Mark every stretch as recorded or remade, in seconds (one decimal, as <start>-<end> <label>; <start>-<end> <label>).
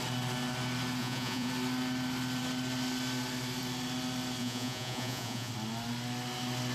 0.0-1.0 recorded; 1.0-1.5 remade; 1.5-4.4 recorded; 4.4-5.5 remade; 5.5-6.7 recorded